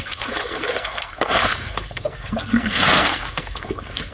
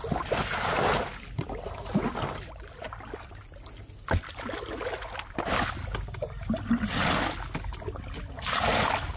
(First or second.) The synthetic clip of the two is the first